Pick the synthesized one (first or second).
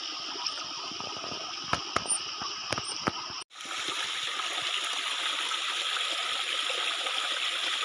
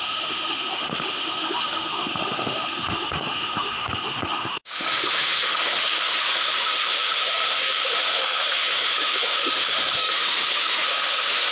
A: second